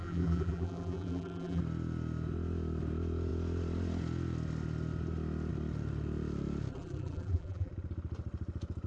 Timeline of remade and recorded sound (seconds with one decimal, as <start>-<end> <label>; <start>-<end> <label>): 0.0-1.6 remade; 1.6-6.7 recorded; 6.7-7.7 remade; 7.7-8.9 recorded